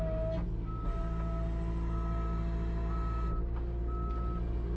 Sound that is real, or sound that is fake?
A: real